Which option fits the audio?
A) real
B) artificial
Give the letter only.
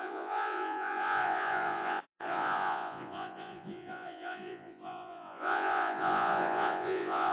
B